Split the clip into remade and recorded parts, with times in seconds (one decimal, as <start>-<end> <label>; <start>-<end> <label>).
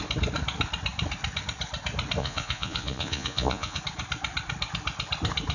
0.0-2.2 recorded; 2.2-3.8 remade; 3.8-5.5 recorded